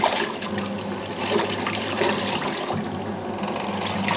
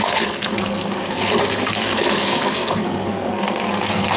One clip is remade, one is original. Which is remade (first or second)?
second